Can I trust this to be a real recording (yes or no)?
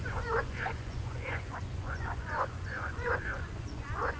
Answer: no